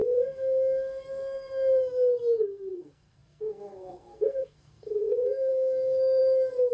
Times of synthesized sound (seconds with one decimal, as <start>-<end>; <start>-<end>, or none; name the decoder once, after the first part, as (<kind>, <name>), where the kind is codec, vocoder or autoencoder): 0.0-6.7 (codec, SNAC)